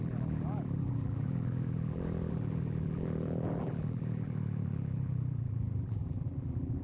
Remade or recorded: remade